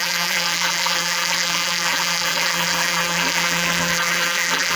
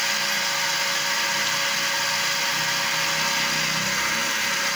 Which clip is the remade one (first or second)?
first